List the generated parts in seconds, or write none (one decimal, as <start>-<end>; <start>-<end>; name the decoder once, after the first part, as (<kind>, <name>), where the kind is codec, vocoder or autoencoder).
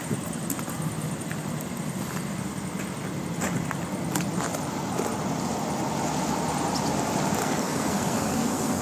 7.4-8.8 (codec, SNAC)